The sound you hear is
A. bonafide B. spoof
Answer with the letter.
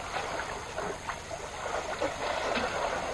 A